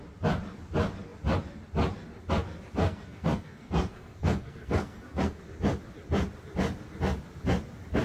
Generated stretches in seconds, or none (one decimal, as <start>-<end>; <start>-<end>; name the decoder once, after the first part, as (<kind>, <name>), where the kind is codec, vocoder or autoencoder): 2.8-5.4 (codec, SNAC)